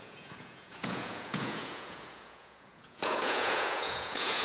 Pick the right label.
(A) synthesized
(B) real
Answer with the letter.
A